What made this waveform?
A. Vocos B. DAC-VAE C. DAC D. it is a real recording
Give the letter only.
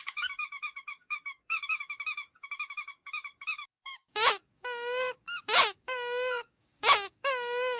C